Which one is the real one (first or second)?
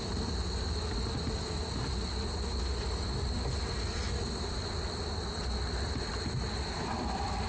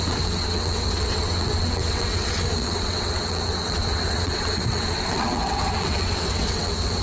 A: first